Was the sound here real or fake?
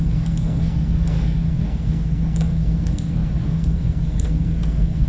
fake